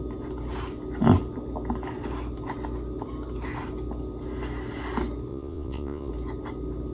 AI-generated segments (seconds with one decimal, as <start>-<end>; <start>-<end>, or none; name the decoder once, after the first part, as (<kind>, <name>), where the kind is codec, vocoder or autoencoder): 5.3-6.1 (vocoder, Vocos)